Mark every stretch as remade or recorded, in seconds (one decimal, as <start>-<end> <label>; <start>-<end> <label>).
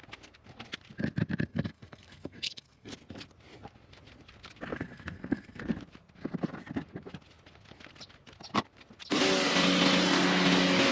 0.0-1.5 recorded; 1.5-2.9 remade; 2.9-4.7 recorded; 4.7-5.6 remade; 5.6-10.9 recorded